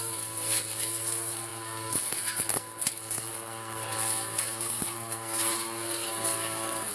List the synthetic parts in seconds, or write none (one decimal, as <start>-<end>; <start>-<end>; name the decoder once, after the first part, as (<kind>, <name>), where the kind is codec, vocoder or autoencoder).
0.0-6.9 (codec, SNAC)